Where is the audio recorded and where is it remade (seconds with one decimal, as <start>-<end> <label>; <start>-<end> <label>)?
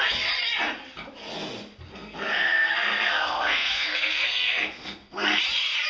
0.0-1.9 recorded; 1.9-5.4 remade; 5.4-5.9 recorded